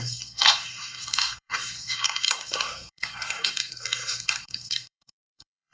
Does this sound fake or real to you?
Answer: fake